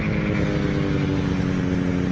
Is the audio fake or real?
real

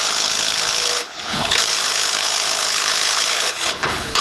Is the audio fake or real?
fake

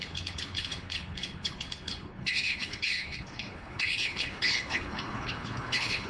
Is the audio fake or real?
fake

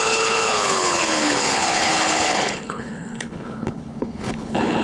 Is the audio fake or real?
fake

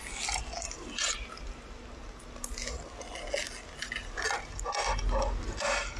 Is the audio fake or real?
real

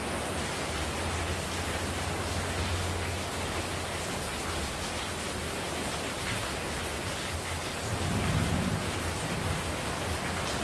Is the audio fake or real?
real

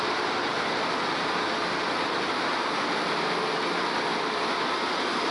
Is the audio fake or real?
real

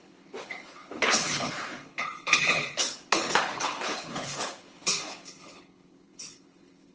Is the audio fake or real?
fake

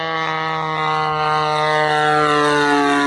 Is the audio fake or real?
real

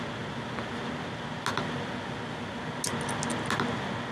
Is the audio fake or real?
real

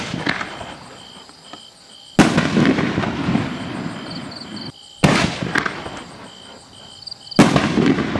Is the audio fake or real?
real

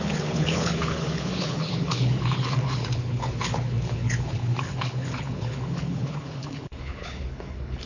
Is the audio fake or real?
fake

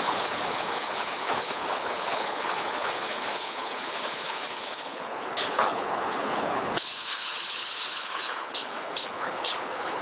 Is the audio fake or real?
fake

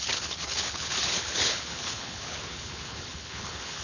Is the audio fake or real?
fake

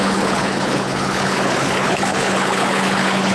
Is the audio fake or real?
fake